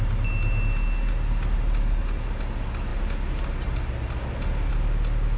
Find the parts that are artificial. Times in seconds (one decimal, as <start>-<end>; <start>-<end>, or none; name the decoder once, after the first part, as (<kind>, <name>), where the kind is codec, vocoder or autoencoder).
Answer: none